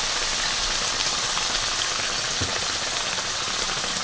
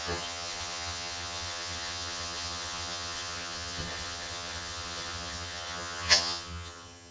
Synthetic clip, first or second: second